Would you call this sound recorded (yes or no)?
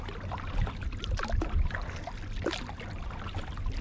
yes